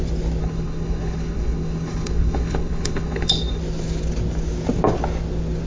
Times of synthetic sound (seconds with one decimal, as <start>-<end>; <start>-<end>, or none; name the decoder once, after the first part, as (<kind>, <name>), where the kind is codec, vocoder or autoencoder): 0.4-3.6 (codec, HILCodec)